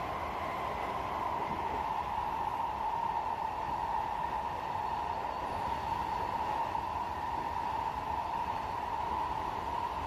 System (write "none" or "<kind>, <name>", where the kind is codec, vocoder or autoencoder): vocoder, BigVGAN v2